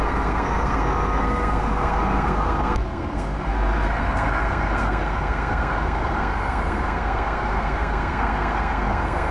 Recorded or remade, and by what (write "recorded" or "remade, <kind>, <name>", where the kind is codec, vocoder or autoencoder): remade, codec, SNAC